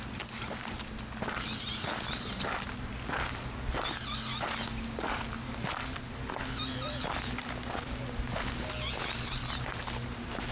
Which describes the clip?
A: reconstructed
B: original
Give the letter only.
B